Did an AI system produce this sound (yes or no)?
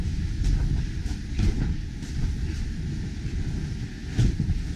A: no